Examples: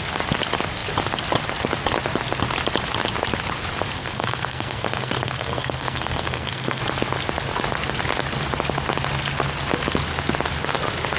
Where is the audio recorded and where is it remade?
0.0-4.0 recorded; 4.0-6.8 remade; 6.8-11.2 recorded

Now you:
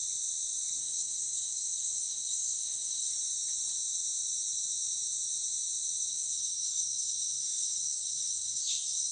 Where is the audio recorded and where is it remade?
0.0-0.8 recorded; 0.8-3.1 remade; 3.1-6.1 recorded; 6.1-9.1 remade

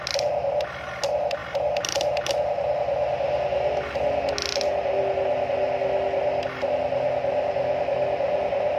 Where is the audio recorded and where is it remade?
0.0-8.8 recorded

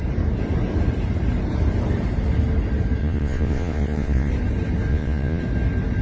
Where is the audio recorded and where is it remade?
0.0-3.0 recorded; 3.0-4.3 remade; 4.3-4.9 recorded; 4.9-5.4 remade; 5.4-6.0 recorded

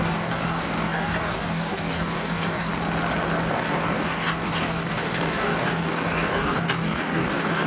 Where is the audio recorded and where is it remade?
0.0-2.7 remade; 2.7-3.5 recorded; 3.5-7.7 remade

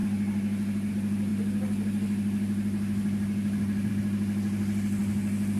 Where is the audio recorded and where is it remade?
0.0-5.6 recorded